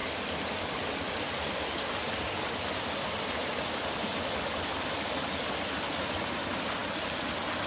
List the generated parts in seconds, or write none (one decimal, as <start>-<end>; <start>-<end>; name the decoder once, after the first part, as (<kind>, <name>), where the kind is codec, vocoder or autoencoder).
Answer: 2.0-5.6 (vocoder, BigVGAN v2)